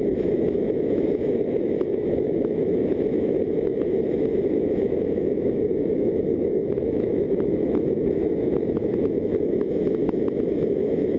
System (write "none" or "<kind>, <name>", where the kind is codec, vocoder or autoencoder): autoencoder, DAC-VAE